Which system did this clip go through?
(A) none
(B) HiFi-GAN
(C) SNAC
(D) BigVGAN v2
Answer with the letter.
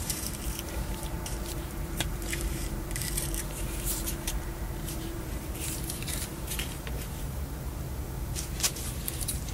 D